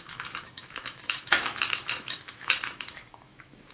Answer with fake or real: fake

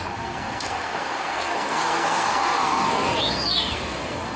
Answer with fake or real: fake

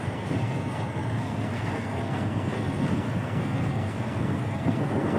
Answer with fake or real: fake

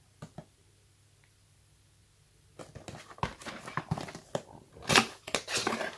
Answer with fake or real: real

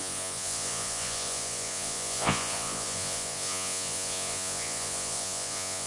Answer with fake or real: fake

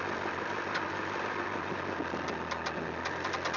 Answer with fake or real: real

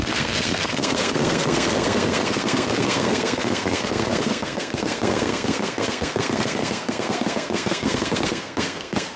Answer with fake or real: fake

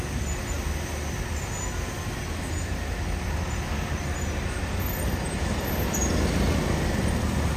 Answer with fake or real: real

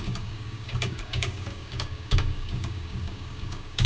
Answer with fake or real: fake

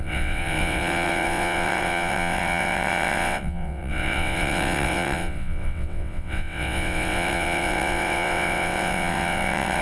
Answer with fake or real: fake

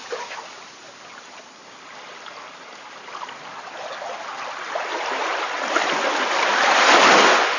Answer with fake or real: real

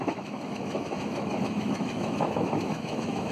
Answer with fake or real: fake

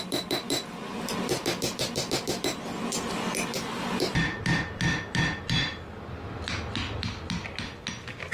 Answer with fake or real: real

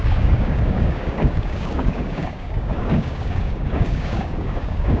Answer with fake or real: fake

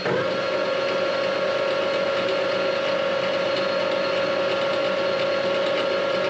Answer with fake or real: real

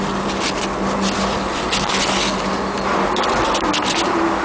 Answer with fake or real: real